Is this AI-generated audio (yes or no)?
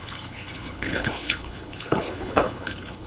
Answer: yes